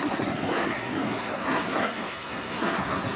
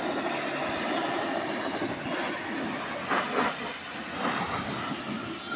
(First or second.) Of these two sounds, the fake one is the first